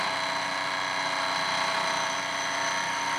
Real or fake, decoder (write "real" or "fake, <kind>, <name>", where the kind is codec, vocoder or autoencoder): real